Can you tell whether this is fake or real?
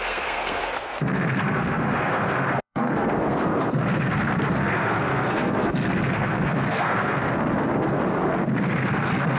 fake